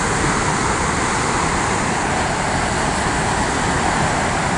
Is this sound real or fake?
real